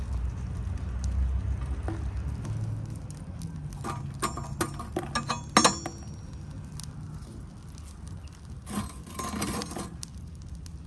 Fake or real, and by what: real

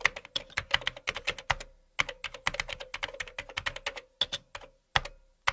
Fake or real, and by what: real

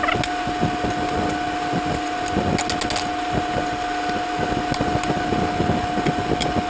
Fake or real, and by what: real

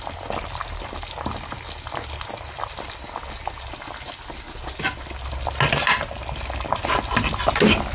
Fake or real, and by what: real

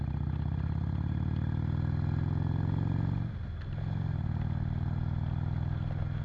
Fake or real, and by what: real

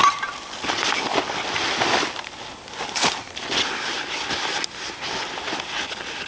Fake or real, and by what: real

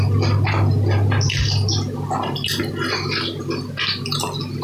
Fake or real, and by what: real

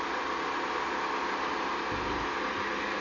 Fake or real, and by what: real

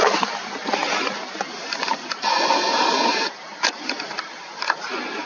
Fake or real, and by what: real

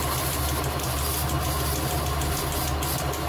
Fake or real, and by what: real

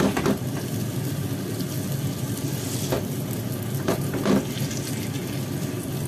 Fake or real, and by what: real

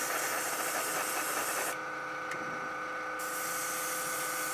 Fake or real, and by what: real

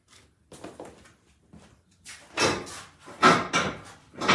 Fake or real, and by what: real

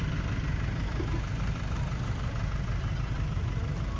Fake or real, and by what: real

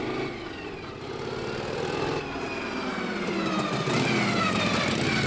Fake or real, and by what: real